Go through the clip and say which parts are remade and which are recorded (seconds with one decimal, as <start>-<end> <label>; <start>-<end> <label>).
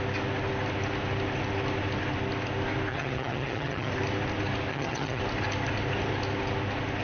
0.0-2.9 recorded; 2.9-3.9 remade; 3.9-4.7 recorded; 4.7-5.2 remade; 5.2-7.0 recorded